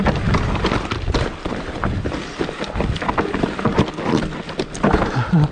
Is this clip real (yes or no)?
yes